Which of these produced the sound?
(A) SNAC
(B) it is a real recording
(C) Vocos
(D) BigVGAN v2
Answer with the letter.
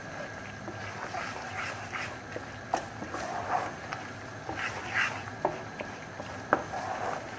B